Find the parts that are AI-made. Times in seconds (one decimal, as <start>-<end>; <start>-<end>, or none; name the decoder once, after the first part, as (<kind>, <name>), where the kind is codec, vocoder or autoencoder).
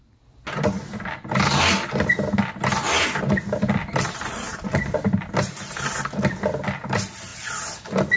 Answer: none